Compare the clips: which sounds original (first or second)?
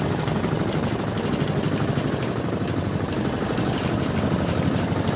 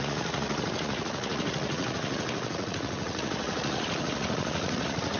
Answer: first